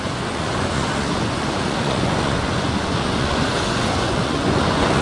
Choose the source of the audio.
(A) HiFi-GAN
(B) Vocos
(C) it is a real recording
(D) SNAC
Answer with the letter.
B